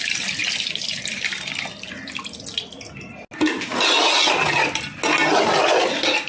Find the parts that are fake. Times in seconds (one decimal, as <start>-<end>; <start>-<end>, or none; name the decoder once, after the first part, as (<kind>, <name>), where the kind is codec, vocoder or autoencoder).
none